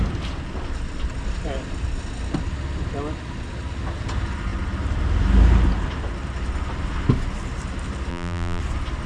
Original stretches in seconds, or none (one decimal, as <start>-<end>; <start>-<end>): 0.0-8.1; 8.6-9.1